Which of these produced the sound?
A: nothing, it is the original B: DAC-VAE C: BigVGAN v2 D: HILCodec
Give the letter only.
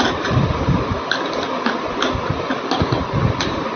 A